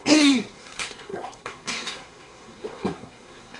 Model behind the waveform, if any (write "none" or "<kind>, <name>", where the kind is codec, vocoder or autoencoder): codec, SNAC